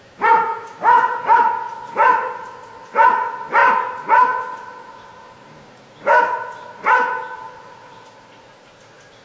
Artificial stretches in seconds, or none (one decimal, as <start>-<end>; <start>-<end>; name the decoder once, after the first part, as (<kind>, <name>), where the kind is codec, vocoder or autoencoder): none

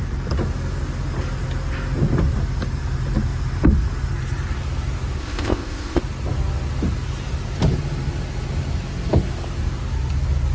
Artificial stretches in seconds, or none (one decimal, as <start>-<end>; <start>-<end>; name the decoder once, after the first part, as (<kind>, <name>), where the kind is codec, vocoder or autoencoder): 5.2-6.0 (codec, ZipCodec)